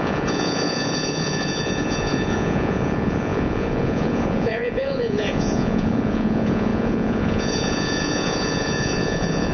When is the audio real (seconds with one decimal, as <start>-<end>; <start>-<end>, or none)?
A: none